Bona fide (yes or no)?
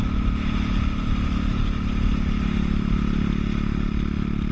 yes